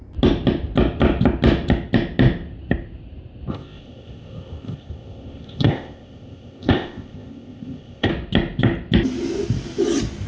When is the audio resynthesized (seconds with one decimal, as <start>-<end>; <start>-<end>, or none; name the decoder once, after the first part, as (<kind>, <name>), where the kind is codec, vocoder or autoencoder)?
3.5-8.1 (codec, ZipCodec)